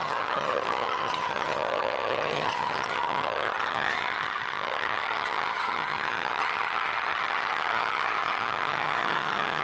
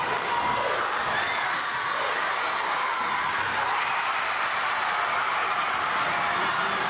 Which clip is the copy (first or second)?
first